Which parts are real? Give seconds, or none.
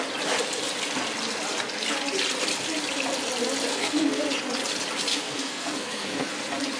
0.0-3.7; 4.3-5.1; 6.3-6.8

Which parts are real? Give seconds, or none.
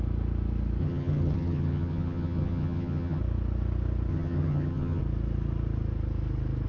0.0-0.8; 3.2-4.1; 5.0-6.7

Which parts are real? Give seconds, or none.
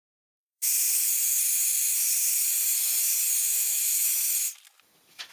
0.7-3.4; 4.1-5.3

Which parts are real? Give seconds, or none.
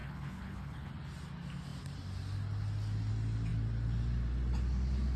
0.9-5.2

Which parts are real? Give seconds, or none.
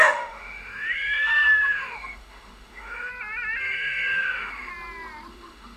3.1-3.6; 4.7-5.3